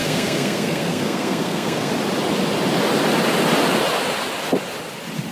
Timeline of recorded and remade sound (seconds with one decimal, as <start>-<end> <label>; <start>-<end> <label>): 0.0-1.9 remade; 1.9-5.3 recorded